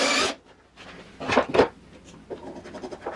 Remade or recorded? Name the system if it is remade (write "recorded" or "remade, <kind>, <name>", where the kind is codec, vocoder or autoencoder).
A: recorded